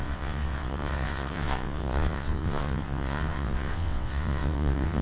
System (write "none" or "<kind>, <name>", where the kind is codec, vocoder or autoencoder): vocoder, WaveNeXt